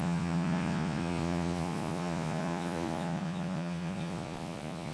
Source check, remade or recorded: remade